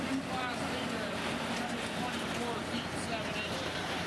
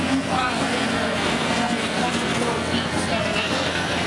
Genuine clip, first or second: first